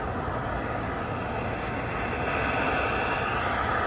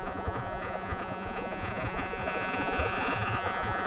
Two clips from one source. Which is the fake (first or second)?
second